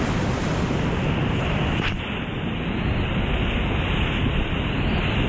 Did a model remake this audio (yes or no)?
no